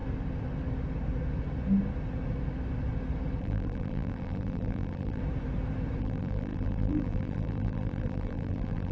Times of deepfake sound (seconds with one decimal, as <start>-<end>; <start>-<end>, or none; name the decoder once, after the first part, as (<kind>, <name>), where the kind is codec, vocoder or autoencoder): 3.4-5.2 (vocoder, BigVGAN v2); 6.0-8.9